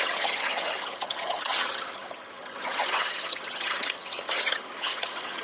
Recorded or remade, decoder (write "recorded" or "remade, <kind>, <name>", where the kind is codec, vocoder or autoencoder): remade, vocoder, HiFi-GAN